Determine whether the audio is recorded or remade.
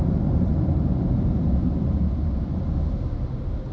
recorded